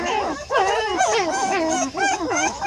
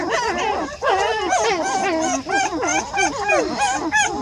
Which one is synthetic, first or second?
first